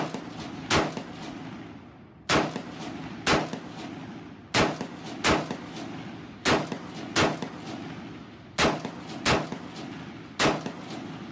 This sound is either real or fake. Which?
real